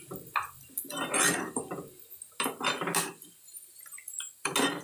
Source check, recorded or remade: recorded